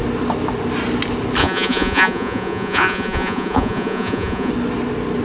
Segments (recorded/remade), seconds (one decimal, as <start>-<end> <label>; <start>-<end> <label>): 0.0-1.4 recorded; 1.4-4.5 remade; 4.5-5.2 recorded